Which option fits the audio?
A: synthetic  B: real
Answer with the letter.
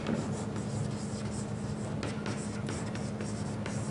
B